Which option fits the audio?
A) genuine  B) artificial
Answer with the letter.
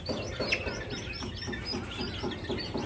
A